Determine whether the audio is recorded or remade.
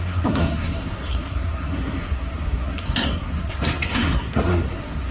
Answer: remade